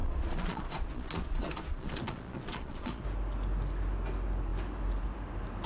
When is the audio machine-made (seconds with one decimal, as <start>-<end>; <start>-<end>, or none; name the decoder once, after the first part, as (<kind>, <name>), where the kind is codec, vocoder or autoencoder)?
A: 0.0-3.0 (vocoder, Vocos)